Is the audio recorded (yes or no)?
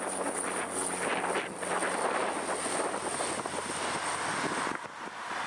yes